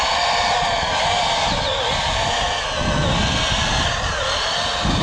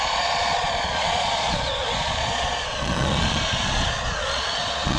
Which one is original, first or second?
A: first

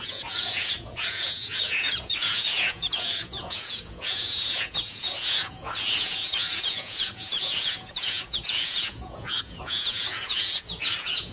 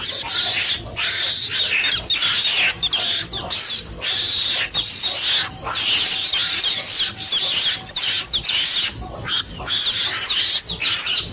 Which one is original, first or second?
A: second